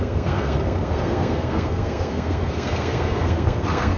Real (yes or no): no